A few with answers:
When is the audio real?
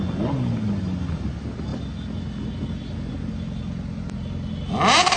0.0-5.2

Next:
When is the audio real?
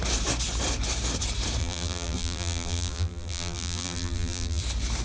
0.0-1.6; 4.6-5.0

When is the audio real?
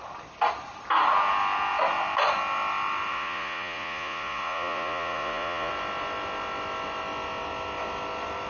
0.0-3.1; 5.7-8.5